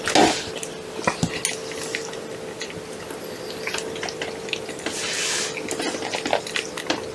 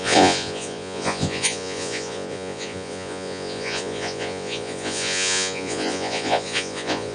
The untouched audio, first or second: first